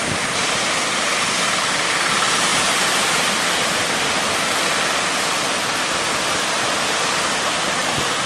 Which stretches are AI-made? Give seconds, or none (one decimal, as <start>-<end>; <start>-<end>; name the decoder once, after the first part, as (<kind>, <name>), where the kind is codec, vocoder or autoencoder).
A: 2.5-5.6 (vocoder, BigVGAN v2); 7.8-8.3